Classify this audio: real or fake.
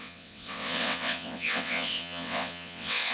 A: fake